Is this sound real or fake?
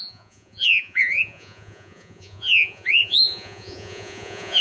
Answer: fake